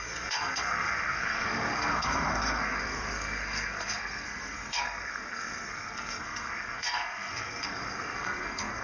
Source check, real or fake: fake